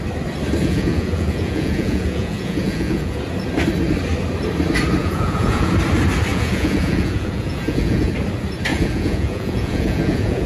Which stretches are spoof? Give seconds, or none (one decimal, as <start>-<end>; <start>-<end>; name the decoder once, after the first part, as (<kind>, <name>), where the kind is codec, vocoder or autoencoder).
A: 0.6-3.2 (vocoder, Vocos); 5.0-5.7; 6.3-8.1; 8.7-10.5